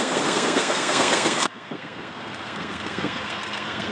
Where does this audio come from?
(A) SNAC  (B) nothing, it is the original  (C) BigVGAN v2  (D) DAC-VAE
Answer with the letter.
A